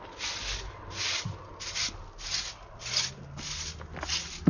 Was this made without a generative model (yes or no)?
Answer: yes